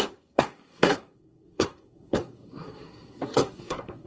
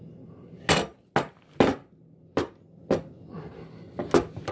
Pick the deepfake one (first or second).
first